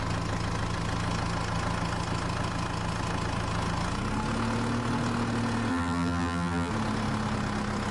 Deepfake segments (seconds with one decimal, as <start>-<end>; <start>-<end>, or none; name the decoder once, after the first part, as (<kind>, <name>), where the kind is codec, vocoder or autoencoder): 5.7-6.7 (vocoder, BigVGAN v2)